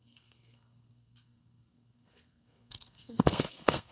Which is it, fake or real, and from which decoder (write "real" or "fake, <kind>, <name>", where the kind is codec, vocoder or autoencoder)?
fake, codec, SNAC